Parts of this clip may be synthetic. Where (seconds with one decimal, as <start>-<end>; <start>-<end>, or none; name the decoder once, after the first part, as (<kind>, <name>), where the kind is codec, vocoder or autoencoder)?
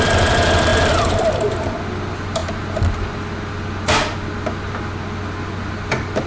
0.0-2.4 (vocoder, BigVGAN v2)